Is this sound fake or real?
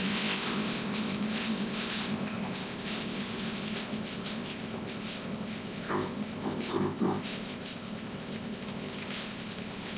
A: fake